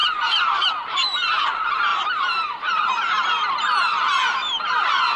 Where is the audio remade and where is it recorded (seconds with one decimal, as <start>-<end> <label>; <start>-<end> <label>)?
0.0-0.5 remade; 0.5-1.9 recorded; 1.9-5.2 remade